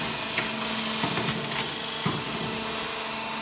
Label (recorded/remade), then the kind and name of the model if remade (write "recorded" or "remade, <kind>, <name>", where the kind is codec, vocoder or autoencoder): recorded